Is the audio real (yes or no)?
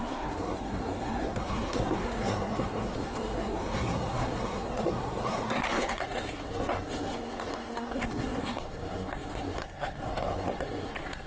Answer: no